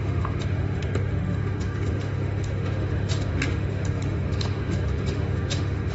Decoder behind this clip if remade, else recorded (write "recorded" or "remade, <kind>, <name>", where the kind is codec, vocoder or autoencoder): remade, autoencoder, DAC-VAE